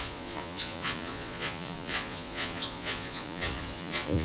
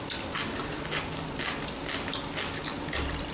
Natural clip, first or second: second